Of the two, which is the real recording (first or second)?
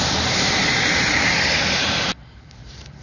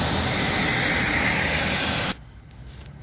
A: second